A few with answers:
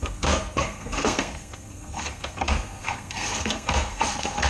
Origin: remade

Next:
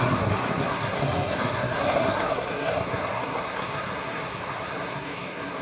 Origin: remade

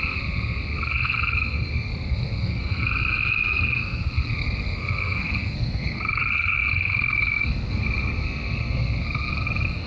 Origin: remade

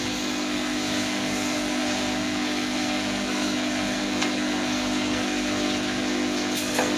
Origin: remade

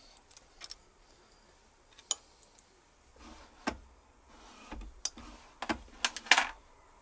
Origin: recorded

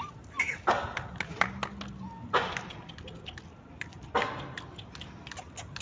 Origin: recorded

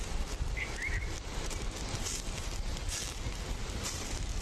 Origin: recorded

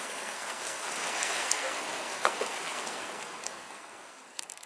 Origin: remade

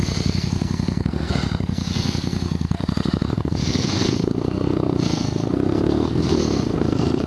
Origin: remade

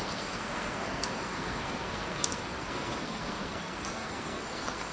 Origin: remade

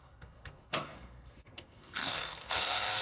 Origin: remade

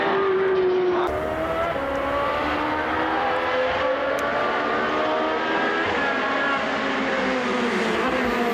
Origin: recorded